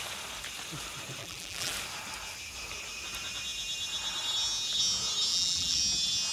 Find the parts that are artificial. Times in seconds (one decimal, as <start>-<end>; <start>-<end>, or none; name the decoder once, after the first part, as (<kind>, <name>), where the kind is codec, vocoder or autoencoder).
1.2-1.7 (vocoder, BigVGAN v2); 5.3-5.8